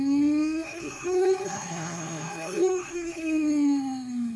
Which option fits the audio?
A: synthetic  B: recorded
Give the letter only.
A